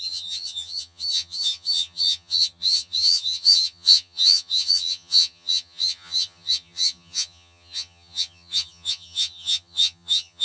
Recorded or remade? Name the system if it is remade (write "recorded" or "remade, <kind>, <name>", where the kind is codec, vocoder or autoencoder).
remade, vocoder, HiFi-GAN